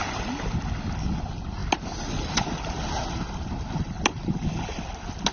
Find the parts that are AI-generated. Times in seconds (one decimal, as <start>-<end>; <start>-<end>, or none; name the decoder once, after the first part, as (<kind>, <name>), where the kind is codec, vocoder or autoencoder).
none